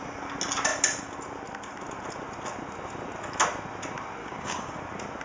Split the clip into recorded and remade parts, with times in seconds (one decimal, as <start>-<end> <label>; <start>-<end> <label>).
0.0-4.2 recorded; 4.2-4.8 remade; 4.8-5.2 recorded